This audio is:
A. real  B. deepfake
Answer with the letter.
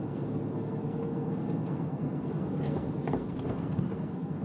B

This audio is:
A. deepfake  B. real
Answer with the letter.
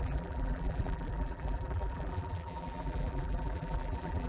A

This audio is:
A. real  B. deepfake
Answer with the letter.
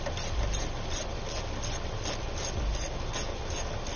A